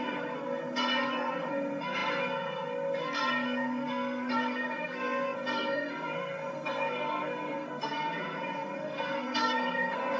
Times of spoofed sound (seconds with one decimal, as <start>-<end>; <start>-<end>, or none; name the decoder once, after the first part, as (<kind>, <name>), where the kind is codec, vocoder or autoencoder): 0.0-10.2 (codec, SNAC)